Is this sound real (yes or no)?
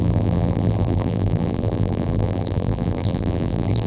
no